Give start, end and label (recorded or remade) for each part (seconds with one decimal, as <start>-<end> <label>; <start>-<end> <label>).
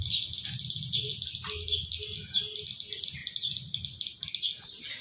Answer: 0.0-5.0 recorded